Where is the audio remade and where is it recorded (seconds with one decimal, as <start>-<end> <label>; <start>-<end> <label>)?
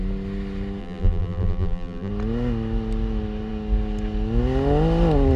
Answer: 0.0-0.8 recorded; 0.8-2.1 remade; 2.1-5.4 recorded